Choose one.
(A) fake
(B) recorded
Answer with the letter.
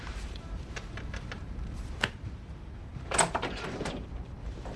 A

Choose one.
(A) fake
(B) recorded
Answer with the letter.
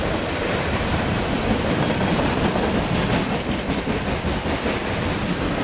B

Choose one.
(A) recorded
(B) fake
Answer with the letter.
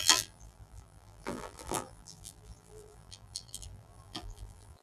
B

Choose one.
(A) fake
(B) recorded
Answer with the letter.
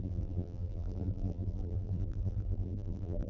A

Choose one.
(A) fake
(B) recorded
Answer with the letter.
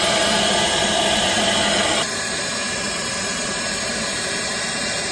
A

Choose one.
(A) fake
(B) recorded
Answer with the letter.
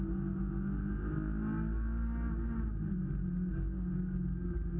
B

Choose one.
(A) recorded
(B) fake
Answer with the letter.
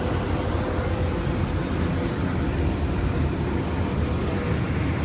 A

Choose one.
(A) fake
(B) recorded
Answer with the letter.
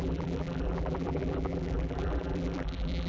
A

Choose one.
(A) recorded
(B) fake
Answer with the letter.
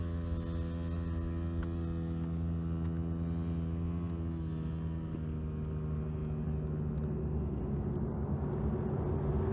A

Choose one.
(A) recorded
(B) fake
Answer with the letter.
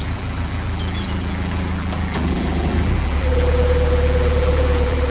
B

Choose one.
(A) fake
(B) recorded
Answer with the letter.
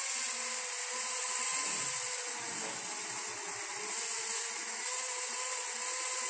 B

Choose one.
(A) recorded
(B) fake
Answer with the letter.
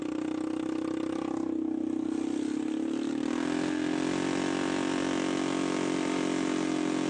A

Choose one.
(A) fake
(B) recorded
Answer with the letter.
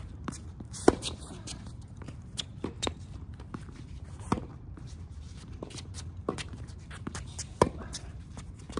A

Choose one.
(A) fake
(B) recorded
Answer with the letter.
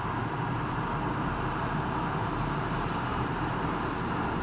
A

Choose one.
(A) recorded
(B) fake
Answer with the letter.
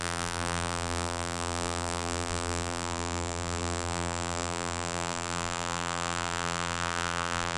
B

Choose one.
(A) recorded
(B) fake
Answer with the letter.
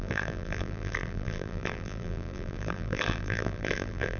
B